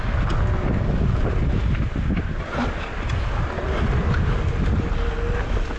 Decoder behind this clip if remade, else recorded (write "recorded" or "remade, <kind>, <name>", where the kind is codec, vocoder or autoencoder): recorded